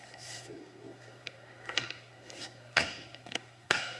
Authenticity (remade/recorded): remade